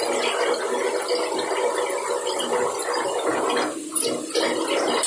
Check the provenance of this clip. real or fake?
real